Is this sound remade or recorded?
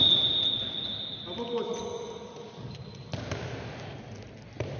recorded